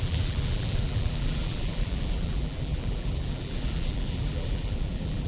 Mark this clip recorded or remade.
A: remade